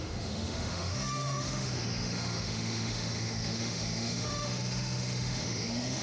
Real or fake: fake